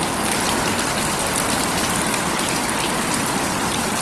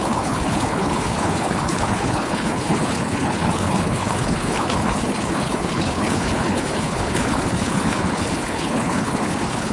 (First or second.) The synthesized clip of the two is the second